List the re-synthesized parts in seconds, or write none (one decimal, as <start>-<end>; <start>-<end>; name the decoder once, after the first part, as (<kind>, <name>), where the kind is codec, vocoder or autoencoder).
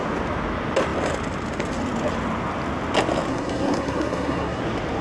3.3-4.6 (codec, SNAC)